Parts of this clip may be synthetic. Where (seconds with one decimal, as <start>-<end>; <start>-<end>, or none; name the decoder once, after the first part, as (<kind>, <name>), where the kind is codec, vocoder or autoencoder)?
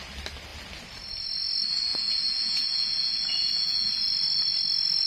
1.9-3.9 (vocoder, Vocos)